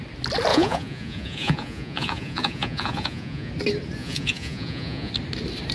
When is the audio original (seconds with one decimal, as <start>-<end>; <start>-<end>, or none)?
0.0-0.5; 3.5-4.0; 5.1-5.7